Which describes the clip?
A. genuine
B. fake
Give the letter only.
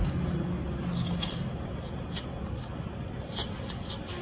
A